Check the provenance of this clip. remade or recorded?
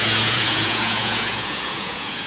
remade